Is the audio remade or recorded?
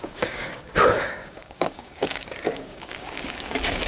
remade